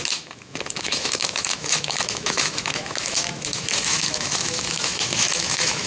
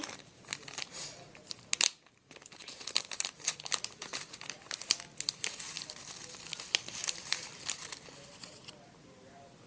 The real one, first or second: second